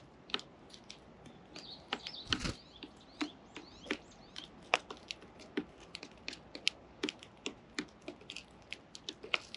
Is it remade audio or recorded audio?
recorded